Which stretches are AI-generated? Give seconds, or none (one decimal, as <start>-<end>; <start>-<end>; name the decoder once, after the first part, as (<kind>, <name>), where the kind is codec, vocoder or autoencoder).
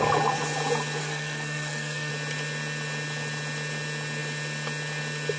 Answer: 1.0-2.1 (codec, SNAC)